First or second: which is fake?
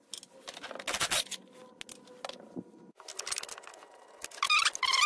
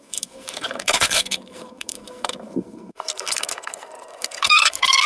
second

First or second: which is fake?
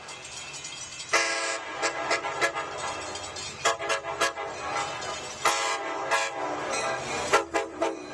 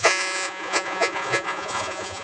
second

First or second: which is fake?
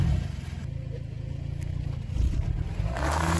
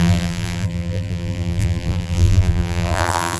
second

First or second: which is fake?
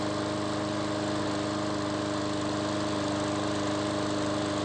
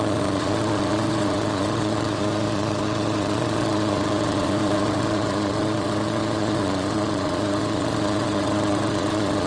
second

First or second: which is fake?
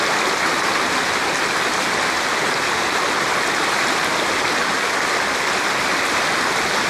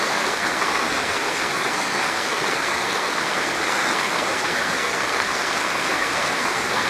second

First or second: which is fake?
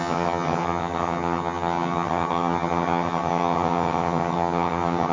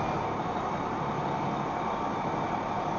first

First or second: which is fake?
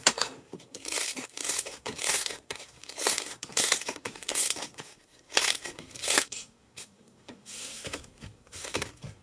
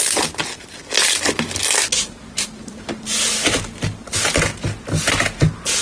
first